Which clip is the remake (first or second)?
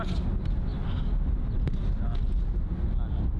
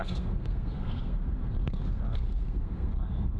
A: second